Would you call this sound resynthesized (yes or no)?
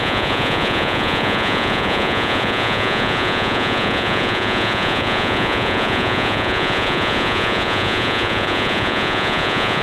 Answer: yes